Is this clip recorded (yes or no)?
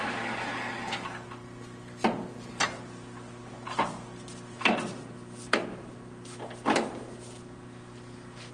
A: yes